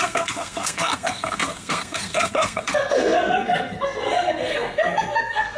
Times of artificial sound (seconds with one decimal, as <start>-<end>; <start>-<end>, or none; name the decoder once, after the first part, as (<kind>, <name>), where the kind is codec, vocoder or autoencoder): 0.0-5.6 (codec, SNAC)